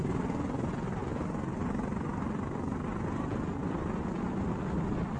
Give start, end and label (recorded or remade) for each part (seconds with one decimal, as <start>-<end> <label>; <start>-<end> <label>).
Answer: 0.0-5.2 recorded